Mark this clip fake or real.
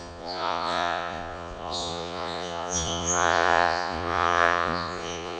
fake